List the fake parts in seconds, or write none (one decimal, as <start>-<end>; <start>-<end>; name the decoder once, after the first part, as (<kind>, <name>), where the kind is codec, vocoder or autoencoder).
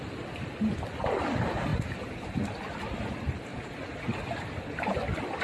none